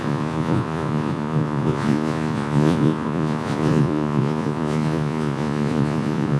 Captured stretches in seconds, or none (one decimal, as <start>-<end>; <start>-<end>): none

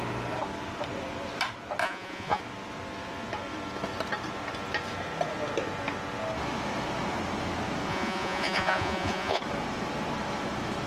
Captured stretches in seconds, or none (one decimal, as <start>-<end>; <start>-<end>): 0.0-1.8; 2.4-7.9; 9.4-10.9

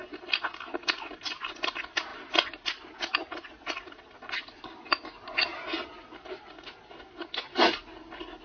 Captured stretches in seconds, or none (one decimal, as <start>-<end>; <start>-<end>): 0.0-8.4

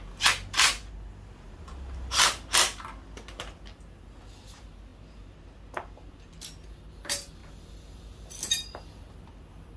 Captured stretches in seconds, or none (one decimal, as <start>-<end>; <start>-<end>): 0.0-9.8

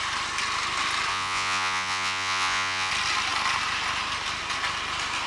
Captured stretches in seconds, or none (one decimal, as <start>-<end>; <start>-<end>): 0.0-1.1; 2.9-5.3

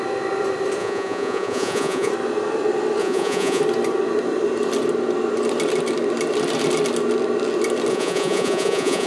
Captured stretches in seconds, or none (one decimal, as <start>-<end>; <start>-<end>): 0.0-0.8; 2.1-3.0; 3.6-7.9

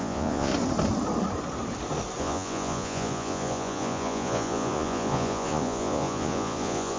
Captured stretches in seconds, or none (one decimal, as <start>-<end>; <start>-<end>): 0.5-2.2

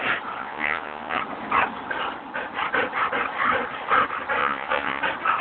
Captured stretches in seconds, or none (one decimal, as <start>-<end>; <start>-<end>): 0.0-0.4; 1.2-4.4; 5.0-5.4